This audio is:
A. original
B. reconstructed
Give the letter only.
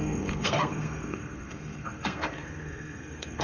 B